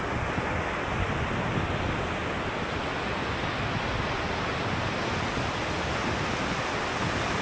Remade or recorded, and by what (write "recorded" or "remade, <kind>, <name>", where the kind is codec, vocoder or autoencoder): recorded